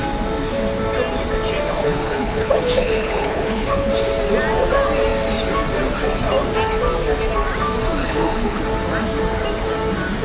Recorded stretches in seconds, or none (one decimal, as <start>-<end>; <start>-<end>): 0.0-1.8; 3.9-8.0; 8.6-10.2